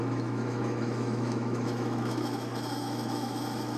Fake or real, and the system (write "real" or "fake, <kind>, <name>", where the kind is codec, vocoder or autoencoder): fake, autoencoder, DAC-VAE